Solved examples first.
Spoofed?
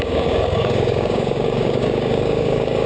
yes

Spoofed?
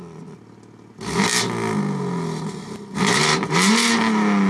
no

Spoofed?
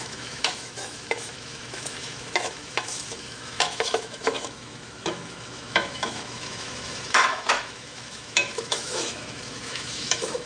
yes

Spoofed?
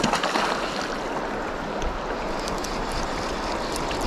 no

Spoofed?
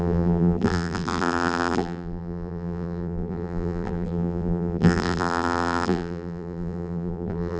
yes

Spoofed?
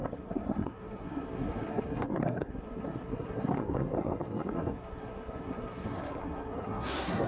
yes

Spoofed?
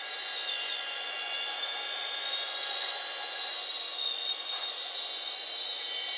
yes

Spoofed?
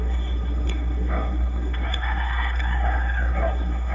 yes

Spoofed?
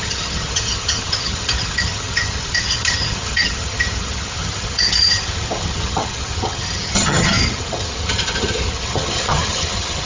yes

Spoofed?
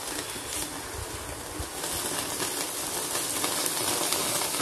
no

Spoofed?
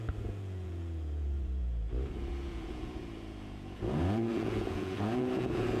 yes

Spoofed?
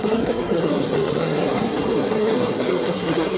yes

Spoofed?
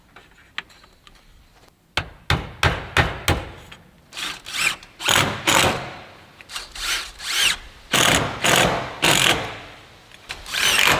no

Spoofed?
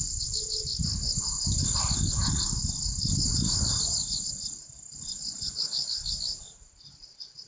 no